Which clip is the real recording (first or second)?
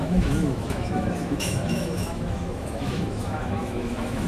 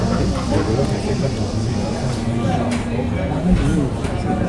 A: second